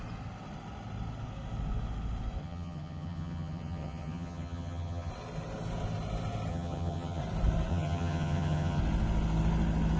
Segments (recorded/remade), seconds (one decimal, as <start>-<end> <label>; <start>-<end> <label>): 0.0-2.4 recorded; 2.4-5.1 remade; 5.1-6.5 recorded; 6.5-7.2 remade; 7.2-7.7 recorded; 7.7-8.8 remade; 8.8-10.0 recorded